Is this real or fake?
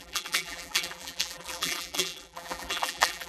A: fake